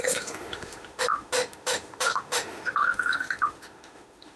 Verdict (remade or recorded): remade